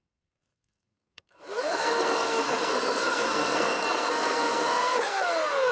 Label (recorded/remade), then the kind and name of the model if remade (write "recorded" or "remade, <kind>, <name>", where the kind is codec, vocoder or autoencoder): remade, codec, SNAC